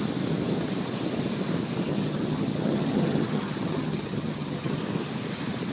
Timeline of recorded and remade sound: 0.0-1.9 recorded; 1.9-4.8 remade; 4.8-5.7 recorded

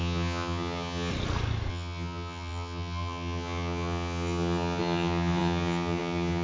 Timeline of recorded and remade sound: 0.0-1.1 remade; 1.1-1.7 recorded; 1.7-6.4 remade